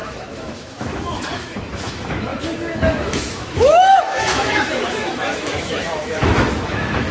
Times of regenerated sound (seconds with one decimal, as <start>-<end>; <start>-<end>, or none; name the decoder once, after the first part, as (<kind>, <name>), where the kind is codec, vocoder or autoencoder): 0.0-7.1 (autoencoder, DAC-VAE)